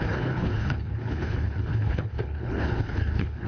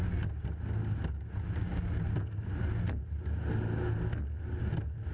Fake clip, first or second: first